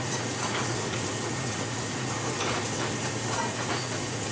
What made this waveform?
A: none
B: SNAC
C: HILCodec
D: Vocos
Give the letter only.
D